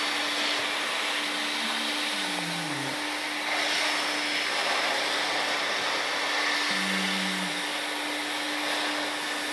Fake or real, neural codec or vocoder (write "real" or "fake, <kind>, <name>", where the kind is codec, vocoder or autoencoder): real